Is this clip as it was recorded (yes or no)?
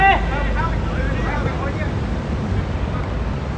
yes